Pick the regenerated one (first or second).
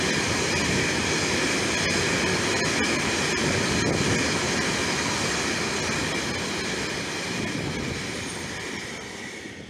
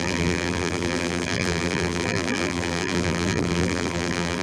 second